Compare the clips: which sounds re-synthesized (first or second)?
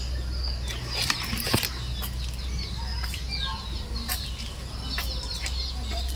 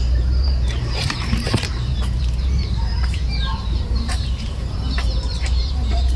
second